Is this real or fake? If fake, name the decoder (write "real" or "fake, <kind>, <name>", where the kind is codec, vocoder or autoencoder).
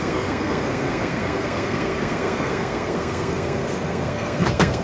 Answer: fake, codec, SNAC